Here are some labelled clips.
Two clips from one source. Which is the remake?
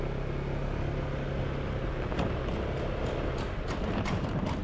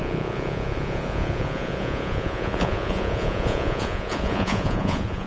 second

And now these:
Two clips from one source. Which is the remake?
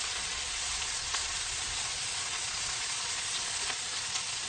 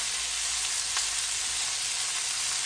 first